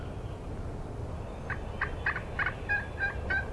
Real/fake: real